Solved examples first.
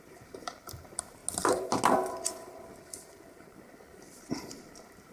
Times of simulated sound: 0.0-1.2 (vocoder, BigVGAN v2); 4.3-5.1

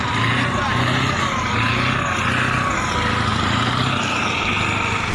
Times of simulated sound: 3.3-5.1 (vocoder, BigVGAN v2)